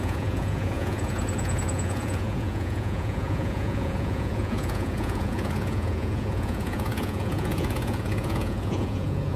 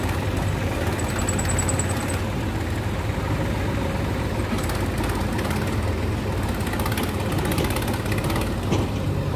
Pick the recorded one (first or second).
second